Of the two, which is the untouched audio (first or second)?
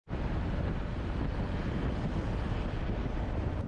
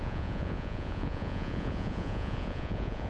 first